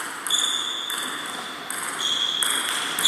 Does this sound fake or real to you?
real